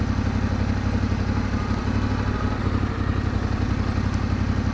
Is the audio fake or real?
real